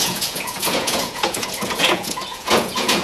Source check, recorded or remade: remade